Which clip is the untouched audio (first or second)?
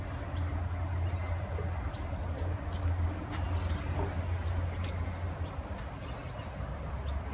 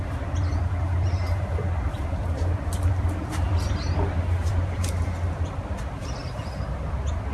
first